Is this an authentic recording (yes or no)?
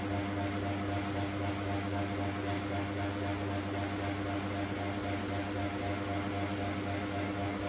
yes